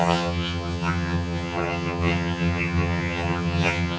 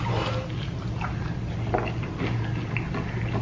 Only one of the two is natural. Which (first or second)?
second